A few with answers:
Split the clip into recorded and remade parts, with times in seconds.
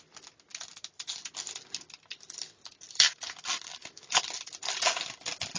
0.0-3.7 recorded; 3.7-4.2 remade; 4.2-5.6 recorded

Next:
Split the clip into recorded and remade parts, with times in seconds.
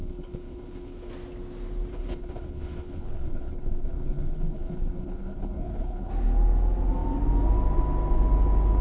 0.0-1.1 remade; 1.1-1.9 recorded; 1.9-6.1 remade; 6.1-8.8 recorded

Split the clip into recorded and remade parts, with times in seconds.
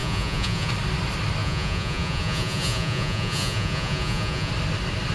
0.0-0.7 remade; 0.7-1.4 recorded; 1.4-4.5 remade; 4.5-5.1 recorded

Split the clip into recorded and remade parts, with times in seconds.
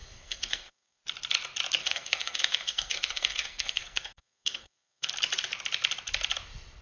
0.0-1.0 remade; 1.0-1.8 recorded; 1.8-5.1 remade; 5.1-6.8 recorded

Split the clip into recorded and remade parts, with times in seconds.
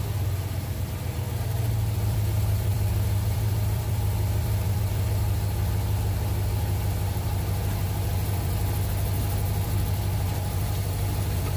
0.0-11.6 remade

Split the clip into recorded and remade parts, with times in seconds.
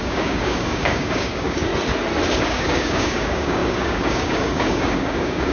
0.0-1.7 remade; 1.7-2.4 recorded; 2.4-5.5 remade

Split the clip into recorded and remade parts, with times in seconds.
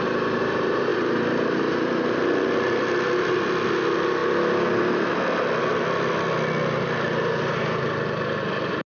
0.0-8.9 recorded